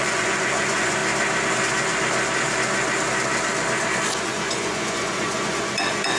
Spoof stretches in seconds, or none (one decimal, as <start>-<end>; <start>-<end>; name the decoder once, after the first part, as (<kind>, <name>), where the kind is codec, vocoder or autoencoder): 0.0-1.0 (vocoder, Vocos); 4.2-6.2